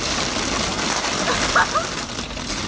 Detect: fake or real real